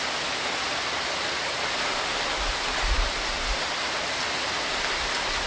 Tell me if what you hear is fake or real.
real